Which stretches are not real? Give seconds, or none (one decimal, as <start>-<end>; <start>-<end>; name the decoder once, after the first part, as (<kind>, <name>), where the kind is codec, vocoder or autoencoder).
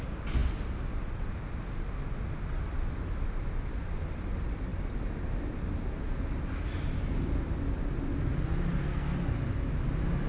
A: 8.7-9.2 (codec, SNAC)